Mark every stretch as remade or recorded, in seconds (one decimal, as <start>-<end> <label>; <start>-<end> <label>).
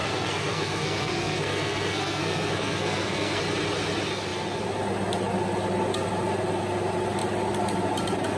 0.0-3.4 remade; 3.4-8.4 recorded